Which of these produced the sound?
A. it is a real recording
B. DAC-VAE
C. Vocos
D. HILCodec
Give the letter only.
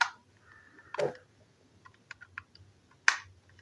A